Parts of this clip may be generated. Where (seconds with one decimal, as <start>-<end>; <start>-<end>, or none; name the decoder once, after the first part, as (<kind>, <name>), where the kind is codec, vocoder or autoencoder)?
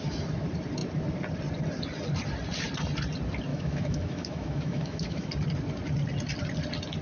3.5-5.3 (autoencoder, DAC-VAE)